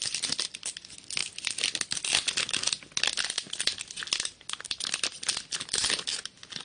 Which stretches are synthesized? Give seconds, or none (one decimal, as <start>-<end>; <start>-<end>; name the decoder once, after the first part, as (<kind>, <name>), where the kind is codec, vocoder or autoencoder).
none